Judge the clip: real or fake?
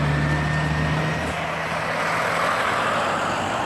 real